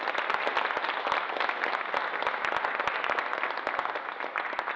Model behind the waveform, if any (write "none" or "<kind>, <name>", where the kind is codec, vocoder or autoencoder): none